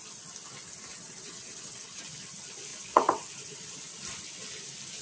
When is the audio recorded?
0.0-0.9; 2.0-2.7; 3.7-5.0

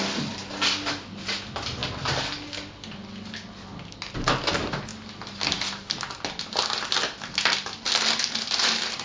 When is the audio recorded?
0.0-9.0

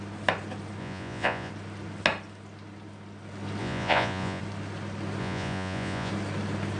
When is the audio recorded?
0.0-0.8; 1.5-3.6; 4.4-5.2; 6.1-6.8

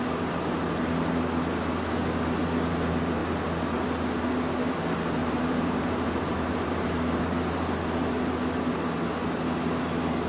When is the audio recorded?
0.0-5.2; 7.2-10.3